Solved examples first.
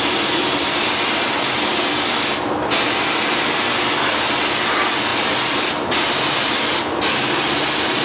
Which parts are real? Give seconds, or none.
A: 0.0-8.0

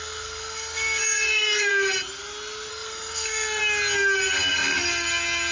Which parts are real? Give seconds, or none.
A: 1.7-2.7; 3.6-5.5

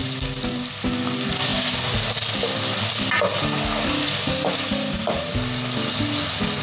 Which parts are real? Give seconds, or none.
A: 0.0-6.6

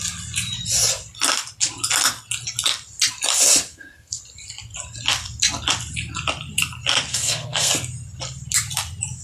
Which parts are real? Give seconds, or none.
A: 0.0-3.7; 4.2-7.1; 7.7-9.2

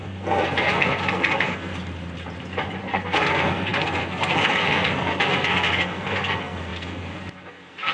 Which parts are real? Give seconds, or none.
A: 1.7-2.8